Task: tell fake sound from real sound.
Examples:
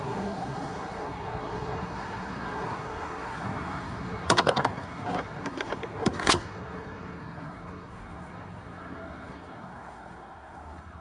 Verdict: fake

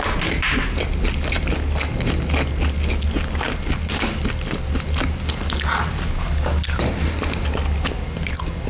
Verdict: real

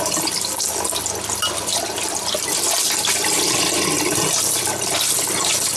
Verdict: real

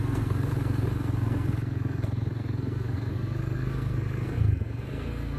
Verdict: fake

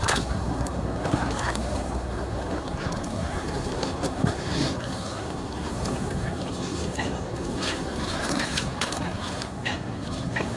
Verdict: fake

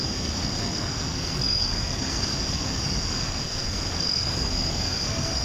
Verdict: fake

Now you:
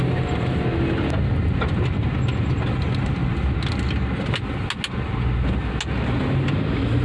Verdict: real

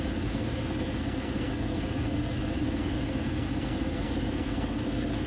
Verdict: fake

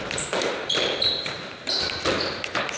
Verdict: real